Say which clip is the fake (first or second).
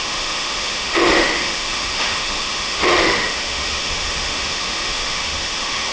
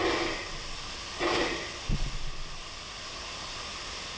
first